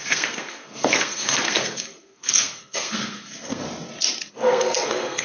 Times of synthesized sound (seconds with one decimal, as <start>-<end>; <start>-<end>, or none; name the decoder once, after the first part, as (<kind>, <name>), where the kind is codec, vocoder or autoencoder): 0.0-3.6 (codec, SNAC); 4.3-5.2